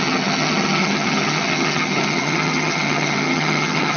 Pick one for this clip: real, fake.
fake